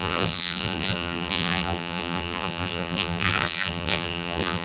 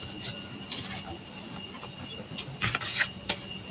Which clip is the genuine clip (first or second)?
second